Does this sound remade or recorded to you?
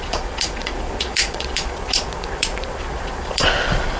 remade